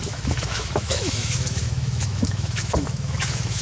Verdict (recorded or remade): remade